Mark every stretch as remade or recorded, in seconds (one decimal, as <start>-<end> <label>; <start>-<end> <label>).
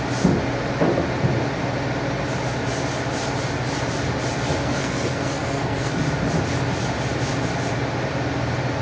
0.0-4.5 recorded; 4.5-6.0 remade; 6.0-8.8 recorded